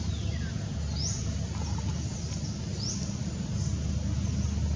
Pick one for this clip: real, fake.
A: real